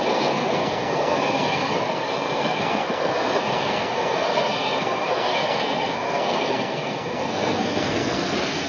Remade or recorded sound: remade